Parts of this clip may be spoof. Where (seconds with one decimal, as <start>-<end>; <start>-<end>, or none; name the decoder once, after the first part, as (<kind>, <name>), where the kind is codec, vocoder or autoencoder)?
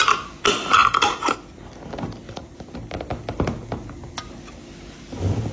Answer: none